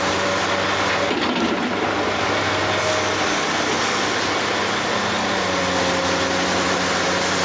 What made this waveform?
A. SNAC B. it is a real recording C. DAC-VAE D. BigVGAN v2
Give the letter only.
B